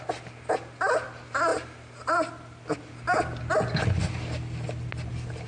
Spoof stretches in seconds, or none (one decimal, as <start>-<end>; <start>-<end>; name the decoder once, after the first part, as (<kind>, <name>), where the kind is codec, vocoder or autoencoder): none